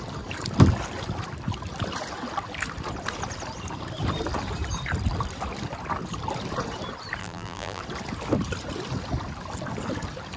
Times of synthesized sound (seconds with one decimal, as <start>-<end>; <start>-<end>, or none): 7.2-7.8